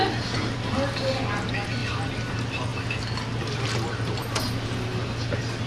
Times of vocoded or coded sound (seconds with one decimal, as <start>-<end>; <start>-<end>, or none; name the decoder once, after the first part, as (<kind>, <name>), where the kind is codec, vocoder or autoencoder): none